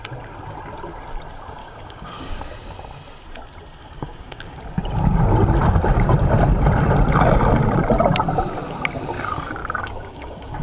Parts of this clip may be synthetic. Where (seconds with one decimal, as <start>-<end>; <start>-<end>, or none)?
1.6-2.4; 3.8-4.6; 9.6-10.6